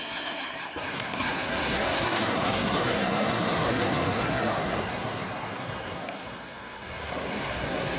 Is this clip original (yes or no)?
no